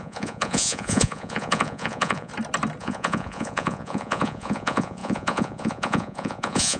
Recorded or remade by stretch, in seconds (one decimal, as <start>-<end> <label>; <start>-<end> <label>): 0.0-2.3 remade; 2.3-2.8 recorded; 2.8-6.8 remade